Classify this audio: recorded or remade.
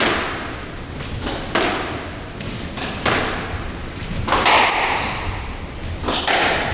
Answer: recorded